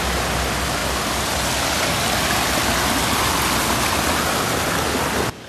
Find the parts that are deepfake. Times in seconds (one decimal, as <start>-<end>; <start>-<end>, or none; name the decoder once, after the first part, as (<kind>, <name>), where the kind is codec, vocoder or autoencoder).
none